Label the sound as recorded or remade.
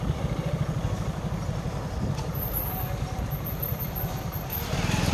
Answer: recorded